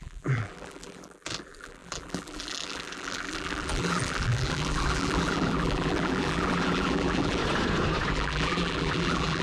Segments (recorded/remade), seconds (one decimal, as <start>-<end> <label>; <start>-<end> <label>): 0.0-7.4 remade; 7.4-8.1 recorded; 8.1-9.4 remade